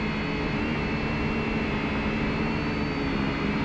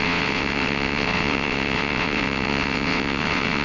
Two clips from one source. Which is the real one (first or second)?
first